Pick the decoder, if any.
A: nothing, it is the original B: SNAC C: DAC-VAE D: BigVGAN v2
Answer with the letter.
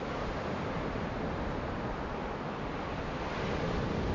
A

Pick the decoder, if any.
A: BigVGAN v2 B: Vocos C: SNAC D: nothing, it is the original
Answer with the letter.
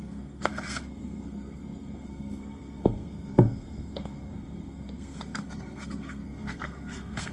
C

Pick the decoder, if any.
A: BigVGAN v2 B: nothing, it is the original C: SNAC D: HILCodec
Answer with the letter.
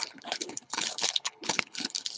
D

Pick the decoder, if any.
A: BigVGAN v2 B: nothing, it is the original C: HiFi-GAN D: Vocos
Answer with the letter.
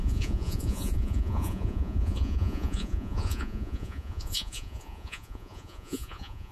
D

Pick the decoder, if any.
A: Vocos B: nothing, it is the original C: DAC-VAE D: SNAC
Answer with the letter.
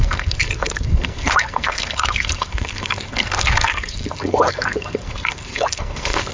D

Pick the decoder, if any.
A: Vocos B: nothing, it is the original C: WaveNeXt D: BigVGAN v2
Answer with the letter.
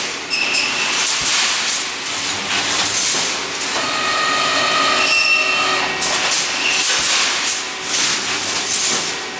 B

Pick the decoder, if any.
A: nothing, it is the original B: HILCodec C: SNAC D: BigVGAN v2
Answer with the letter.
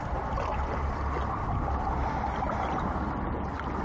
A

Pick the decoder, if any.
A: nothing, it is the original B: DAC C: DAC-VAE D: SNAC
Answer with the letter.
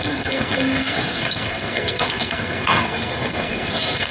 D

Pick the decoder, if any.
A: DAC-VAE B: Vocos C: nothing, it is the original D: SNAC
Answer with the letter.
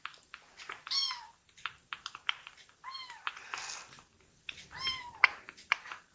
C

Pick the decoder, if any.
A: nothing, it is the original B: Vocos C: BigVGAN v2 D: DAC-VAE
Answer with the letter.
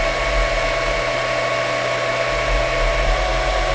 A